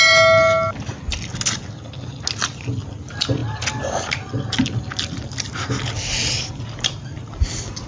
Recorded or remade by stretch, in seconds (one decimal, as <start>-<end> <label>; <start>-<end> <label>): 0.0-7.9 recorded